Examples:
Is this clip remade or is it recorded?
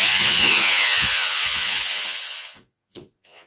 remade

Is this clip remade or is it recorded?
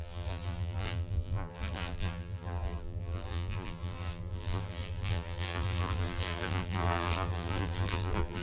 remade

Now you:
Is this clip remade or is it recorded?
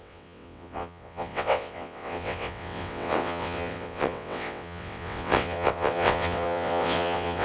remade